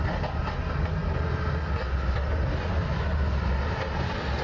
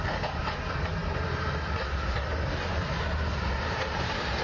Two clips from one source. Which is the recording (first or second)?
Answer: first